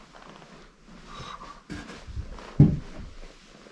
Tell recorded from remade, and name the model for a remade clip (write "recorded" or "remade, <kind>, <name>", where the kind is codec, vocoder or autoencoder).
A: recorded